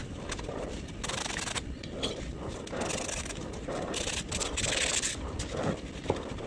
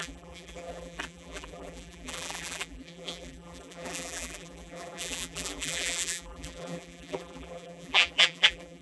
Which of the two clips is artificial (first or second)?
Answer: second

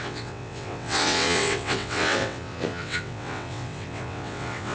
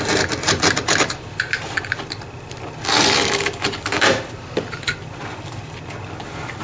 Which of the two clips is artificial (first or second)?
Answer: first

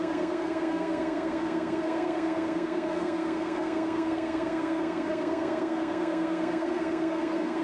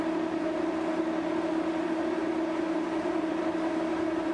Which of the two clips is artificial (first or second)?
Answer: first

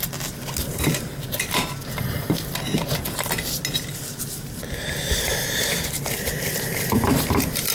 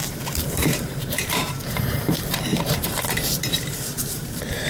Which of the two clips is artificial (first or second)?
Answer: second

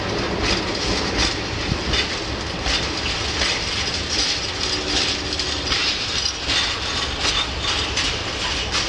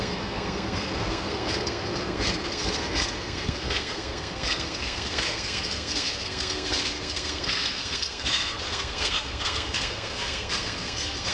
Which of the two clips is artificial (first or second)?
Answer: second